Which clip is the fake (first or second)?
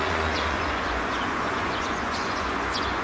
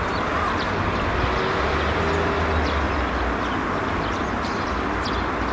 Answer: first